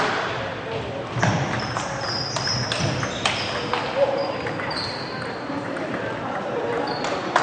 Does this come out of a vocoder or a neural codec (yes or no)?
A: no